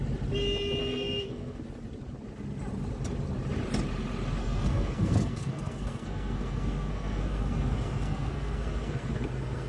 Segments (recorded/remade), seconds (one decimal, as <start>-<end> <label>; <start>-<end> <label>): 0.0-0.8 recorded; 0.8-1.6 remade; 1.6-4.4 recorded; 4.4-9.7 remade